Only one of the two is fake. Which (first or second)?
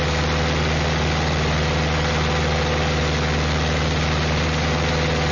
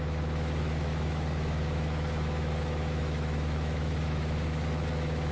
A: second